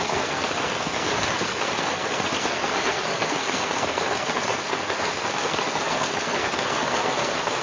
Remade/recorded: remade